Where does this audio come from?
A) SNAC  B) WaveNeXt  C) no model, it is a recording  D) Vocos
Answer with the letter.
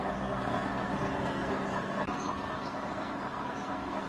A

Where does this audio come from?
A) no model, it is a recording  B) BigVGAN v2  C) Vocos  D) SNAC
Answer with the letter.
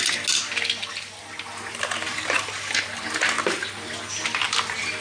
A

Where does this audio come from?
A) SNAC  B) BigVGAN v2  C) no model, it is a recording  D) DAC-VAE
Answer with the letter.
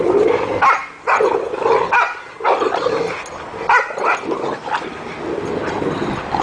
C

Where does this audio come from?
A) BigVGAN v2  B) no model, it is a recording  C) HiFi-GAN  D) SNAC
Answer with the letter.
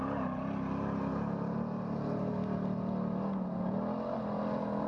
B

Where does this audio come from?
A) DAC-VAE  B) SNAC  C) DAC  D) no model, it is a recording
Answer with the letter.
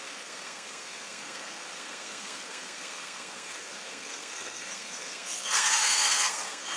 B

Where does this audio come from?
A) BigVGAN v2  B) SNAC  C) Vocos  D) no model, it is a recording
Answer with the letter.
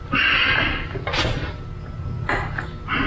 D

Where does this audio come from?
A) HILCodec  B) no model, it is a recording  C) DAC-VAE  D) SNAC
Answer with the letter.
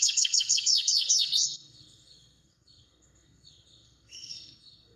D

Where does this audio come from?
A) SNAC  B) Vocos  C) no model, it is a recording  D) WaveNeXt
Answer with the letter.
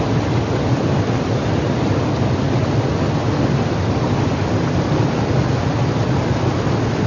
C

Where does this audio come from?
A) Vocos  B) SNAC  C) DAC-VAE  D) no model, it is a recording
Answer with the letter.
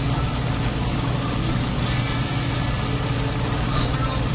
D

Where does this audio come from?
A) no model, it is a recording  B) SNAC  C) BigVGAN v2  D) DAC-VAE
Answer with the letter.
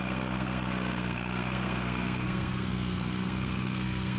B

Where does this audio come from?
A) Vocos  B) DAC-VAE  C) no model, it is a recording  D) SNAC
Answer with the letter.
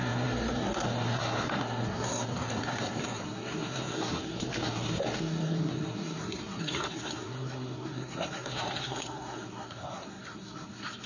D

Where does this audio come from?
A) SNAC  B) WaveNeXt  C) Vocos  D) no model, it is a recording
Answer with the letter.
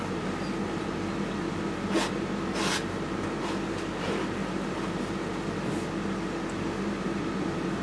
D